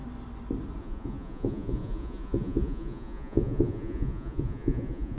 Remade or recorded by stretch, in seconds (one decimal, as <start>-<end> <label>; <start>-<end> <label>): 0.0-0.8 recorded; 0.8-5.2 remade

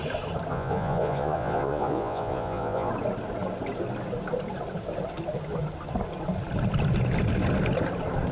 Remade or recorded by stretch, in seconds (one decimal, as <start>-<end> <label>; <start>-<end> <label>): 0.0-0.5 recorded; 0.5-2.9 remade; 2.9-8.3 recorded

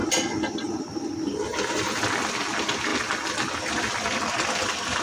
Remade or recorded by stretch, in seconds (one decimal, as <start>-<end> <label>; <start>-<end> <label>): 0.0-1.5 recorded; 1.5-2.0 remade; 2.0-5.0 recorded

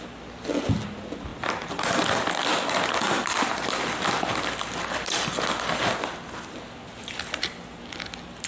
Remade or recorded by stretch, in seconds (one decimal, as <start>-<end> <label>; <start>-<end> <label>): 0.0-8.5 recorded

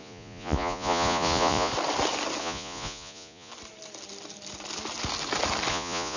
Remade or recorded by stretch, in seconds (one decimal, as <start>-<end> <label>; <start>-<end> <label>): 0.0-1.7 remade; 1.7-2.4 recorded; 2.4-3.5 remade; 3.5-5.7 recorded; 5.7-6.2 remade

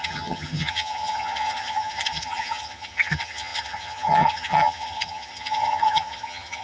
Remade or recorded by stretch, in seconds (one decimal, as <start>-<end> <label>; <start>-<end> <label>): 0.0-6.6 remade

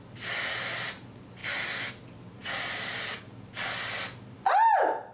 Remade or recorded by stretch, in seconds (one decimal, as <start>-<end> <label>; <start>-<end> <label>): 0.0-5.1 recorded